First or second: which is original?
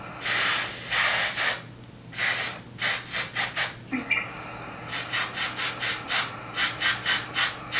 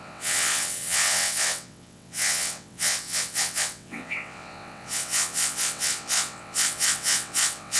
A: first